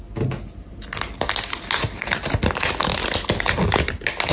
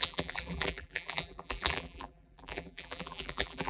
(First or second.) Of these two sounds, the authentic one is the first